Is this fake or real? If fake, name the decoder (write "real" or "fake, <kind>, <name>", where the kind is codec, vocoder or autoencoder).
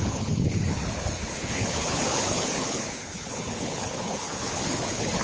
fake, codec, HILCodec